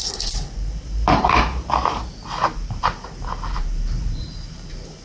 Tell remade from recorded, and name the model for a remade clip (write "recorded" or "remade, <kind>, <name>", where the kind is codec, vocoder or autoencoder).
remade, vocoder, BigVGAN v2